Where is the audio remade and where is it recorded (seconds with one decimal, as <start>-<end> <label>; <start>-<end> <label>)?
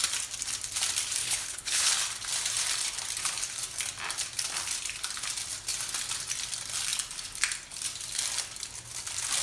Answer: 0.0-1.2 recorded; 1.2-1.9 remade; 1.9-9.4 recorded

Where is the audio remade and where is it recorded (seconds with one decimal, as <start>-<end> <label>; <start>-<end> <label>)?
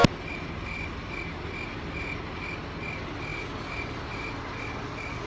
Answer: 0.0-5.3 recorded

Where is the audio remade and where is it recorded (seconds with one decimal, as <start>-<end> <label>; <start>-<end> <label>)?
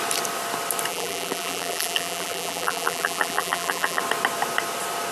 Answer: 0.0-0.9 recorded; 0.9-4.0 remade; 4.0-5.1 recorded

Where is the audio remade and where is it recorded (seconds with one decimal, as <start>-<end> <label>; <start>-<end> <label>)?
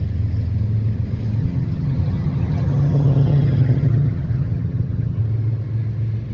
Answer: 0.0-1.4 recorded; 1.4-5.2 remade; 5.2-6.3 recorded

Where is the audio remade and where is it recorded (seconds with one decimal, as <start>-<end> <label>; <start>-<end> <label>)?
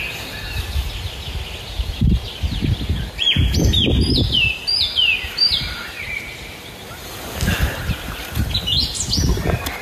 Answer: 0.0-5.4 recorded; 5.4-6.1 remade; 6.1-9.8 recorded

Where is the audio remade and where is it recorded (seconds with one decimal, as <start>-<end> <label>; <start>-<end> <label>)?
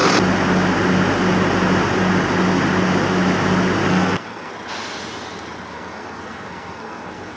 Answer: 0.0-3.9 recorded; 3.9-4.5 remade; 4.5-5.7 recorded; 5.7-7.4 remade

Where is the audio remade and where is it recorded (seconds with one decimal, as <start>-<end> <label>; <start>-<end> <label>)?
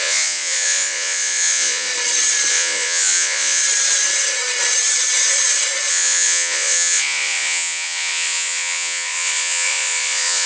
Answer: 0.0-1.9 remade; 1.9-2.5 recorded; 2.5-3.6 remade; 3.6-5.9 recorded; 5.9-10.5 remade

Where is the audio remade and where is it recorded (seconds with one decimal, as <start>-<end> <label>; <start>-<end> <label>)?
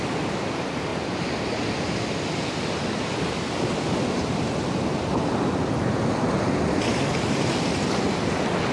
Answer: 0.0-8.7 recorded